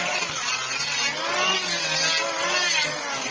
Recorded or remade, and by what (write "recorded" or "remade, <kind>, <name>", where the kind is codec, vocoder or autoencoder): recorded